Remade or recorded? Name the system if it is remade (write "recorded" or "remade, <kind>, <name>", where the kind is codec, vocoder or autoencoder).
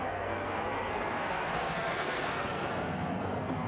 remade, codec, SNAC